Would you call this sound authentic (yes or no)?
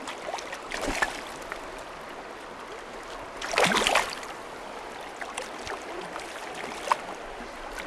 yes